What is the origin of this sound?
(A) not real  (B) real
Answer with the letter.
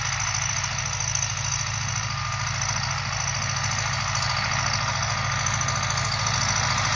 B